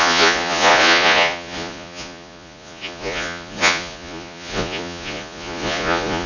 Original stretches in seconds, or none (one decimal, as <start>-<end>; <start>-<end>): none